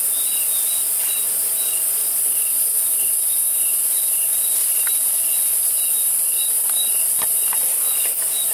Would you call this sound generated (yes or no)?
no